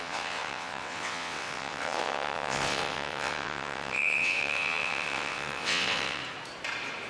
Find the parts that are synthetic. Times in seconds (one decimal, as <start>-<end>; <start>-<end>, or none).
0.0-6.2